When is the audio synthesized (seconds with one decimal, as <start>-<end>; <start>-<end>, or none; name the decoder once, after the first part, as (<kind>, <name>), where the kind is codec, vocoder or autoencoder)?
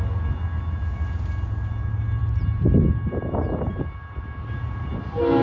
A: none